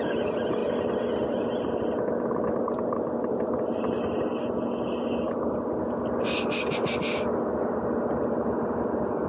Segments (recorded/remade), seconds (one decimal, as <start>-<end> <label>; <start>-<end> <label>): 0.0-9.3 recorded